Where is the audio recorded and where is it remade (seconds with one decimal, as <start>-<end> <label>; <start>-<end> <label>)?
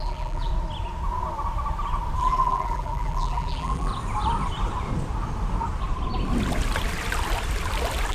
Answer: 0.0-0.5 remade; 0.5-2.2 recorded; 2.2-3.9 remade; 3.9-8.1 recorded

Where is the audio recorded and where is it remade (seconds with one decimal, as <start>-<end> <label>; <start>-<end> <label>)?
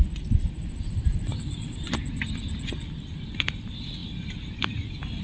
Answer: 0.0-5.2 recorded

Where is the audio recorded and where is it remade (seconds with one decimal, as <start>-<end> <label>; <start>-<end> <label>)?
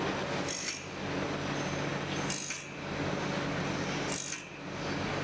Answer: 0.0-5.2 recorded